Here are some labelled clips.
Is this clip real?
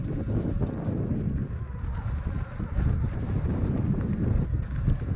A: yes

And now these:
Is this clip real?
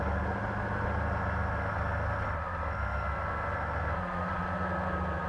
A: yes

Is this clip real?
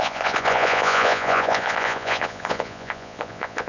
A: no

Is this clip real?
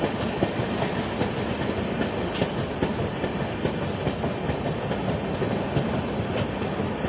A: yes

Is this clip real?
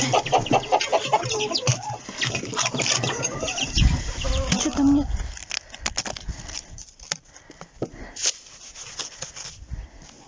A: yes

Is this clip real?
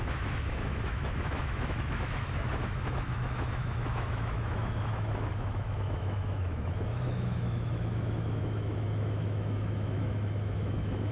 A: no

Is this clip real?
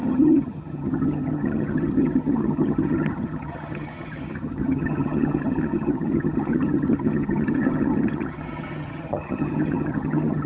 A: no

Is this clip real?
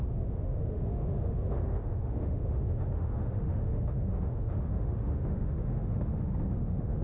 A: no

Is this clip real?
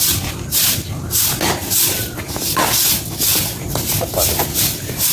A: yes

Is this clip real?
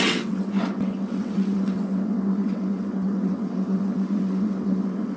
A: no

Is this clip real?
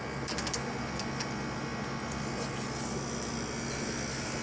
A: yes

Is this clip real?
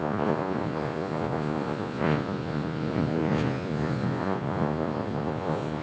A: no